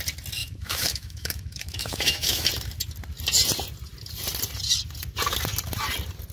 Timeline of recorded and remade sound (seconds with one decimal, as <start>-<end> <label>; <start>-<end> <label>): 0.0-0.4 recorded; 0.4-2.5 remade; 2.5-6.3 recorded